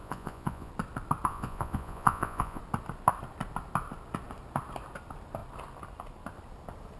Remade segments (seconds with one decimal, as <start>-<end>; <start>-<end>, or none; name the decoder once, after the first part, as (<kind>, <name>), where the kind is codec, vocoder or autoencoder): 0.0-0.7 (vocoder, Vocos); 1.3-2.6